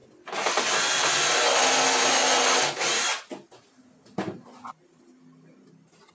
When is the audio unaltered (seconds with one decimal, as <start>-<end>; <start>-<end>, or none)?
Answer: 0.0-6.1